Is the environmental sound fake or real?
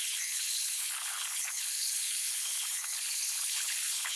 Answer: fake